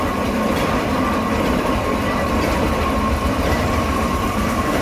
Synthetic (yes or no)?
yes